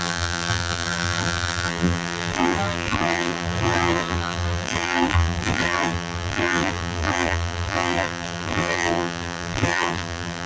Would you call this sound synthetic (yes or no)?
yes